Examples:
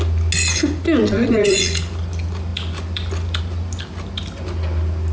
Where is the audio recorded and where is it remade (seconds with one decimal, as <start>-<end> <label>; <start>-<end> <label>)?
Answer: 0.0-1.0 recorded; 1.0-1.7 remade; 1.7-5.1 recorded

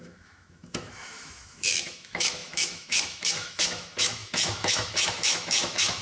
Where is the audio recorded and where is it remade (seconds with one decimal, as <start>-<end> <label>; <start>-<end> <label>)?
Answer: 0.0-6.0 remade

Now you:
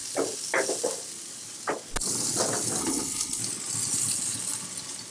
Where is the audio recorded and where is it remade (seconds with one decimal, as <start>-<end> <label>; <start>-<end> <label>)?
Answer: 0.0-2.8 recorded; 2.8-3.4 remade; 3.4-5.1 recorded